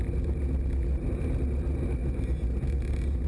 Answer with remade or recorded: recorded